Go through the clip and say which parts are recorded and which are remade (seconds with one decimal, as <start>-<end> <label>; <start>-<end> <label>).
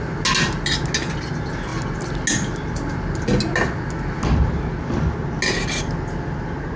0.0-6.8 recorded